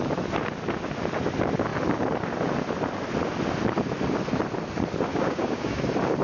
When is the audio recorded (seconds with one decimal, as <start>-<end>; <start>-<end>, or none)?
0.0-5.1; 5.8-6.2

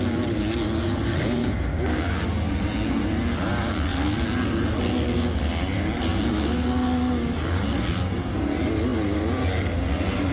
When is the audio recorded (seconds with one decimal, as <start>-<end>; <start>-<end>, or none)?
0.0-1.4; 2.1-10.3

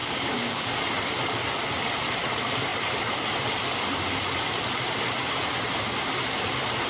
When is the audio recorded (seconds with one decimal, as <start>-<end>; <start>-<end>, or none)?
0.7-6.9

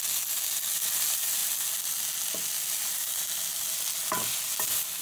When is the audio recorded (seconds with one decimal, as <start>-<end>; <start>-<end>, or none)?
0.0-5.0